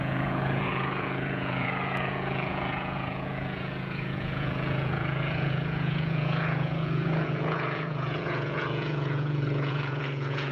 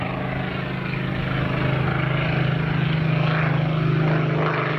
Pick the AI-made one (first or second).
first